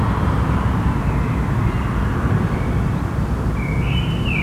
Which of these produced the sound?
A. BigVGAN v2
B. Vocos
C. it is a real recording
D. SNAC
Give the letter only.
C